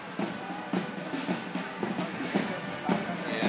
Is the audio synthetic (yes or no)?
no